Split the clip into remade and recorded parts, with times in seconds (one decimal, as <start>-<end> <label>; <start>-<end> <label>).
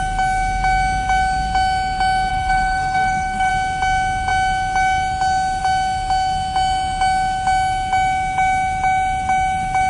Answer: 0.0-2.3 recorded; 2.3-3.5 remade; 3.5-9.9 recorded